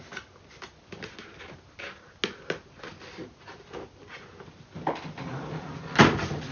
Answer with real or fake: real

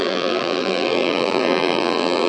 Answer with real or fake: fake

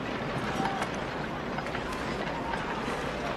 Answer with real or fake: real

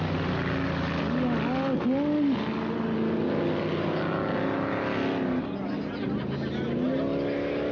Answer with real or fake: real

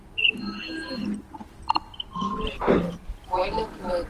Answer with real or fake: real